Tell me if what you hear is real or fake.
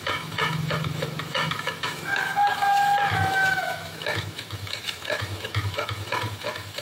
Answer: fake